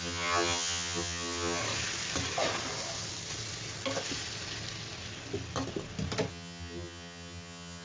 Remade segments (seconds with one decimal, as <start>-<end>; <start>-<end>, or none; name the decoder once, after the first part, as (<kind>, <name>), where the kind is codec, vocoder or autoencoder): 0.0-1.6 (vocoder, HiFi-GAN); 6.3-7.8